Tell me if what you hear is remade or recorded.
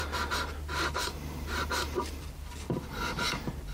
remade